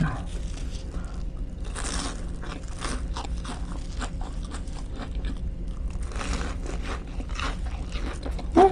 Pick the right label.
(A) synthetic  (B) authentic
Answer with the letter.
B